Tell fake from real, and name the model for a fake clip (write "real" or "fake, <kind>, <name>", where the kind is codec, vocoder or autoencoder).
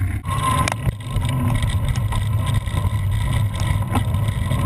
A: real